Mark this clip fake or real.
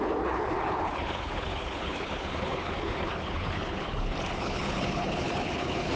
fake